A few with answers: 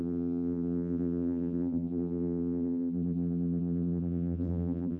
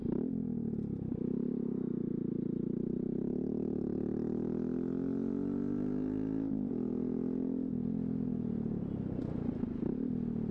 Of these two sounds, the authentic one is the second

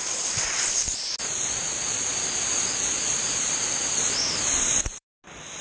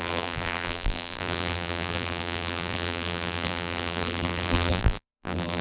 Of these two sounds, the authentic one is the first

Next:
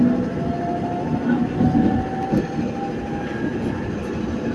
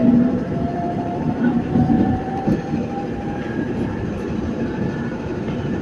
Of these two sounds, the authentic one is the first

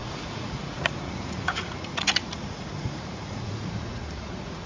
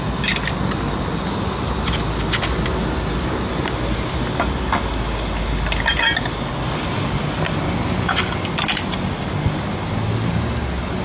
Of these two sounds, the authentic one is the second